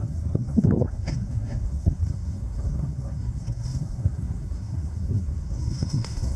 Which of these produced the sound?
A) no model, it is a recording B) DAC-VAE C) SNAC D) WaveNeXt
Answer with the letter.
C